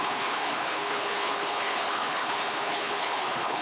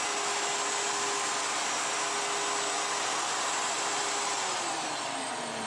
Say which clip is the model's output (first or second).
first